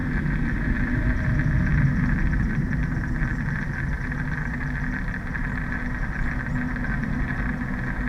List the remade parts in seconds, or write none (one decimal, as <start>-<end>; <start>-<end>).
none